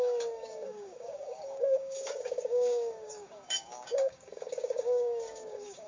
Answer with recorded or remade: remade